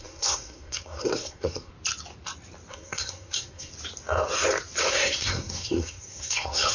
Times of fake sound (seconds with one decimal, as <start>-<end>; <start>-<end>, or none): 0.0-1.7; 2.7-3.7; 4.9-6.7